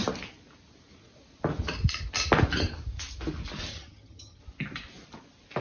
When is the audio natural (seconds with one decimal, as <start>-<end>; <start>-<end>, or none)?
0.0-3.7; 4.4-5.6